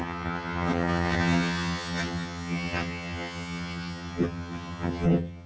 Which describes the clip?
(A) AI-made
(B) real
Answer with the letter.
A